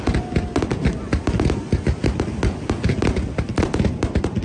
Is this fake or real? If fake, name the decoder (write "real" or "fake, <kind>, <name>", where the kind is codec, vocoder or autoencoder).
real